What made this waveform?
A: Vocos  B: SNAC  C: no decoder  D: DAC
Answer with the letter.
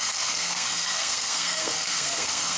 B